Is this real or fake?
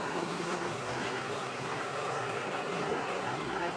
fake